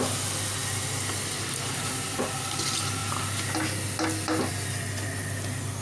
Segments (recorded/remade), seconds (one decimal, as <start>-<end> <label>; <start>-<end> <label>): 0.0-5.8 recorded